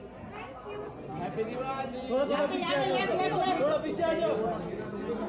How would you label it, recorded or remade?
recorded